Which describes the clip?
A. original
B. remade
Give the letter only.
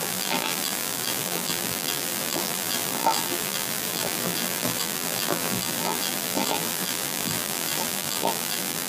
B